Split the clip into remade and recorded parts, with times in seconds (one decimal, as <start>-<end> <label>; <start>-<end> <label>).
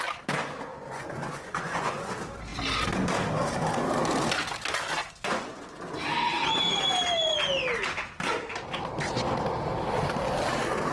0.0-0.7 recorded; 0.7-2.1 remade; 2.1-5.0 recorded; 5.0-5.8 remade; 5.8-10.9 recorded